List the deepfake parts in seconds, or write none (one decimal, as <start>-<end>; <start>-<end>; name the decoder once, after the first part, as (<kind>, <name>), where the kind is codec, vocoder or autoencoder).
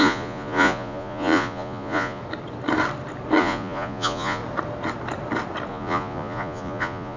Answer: 0.0-2.2 (vocoder, Vocos); 3.4-4.4; 5.7-7.2